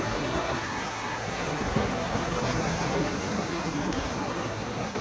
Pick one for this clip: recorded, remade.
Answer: remade